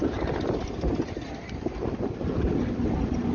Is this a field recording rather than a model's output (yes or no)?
yes